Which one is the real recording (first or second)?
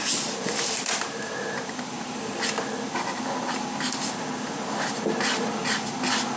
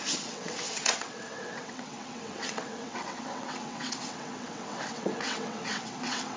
first